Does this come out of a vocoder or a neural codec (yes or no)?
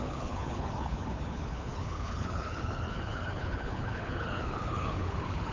yes